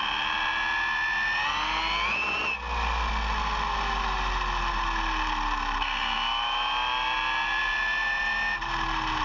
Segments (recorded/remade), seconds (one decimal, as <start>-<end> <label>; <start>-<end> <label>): 0.0-9.2 recorded